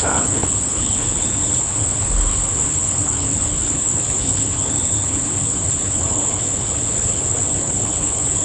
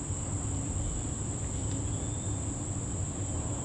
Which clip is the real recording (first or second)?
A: second